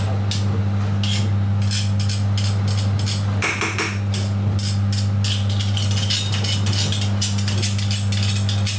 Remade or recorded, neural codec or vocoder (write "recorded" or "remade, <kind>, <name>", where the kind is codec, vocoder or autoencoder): recorded